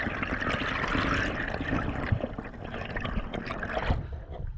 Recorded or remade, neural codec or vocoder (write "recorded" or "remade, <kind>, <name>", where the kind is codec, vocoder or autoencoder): recorded